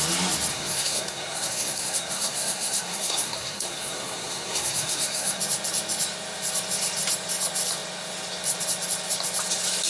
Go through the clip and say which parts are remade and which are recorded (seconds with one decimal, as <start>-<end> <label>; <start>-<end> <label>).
0.0-0.5 recorded; 0.5-5.4 remade; 5.4-9.9 recorded